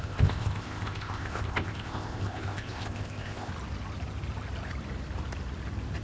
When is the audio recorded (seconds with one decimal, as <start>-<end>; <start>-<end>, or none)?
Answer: 3.5-6.0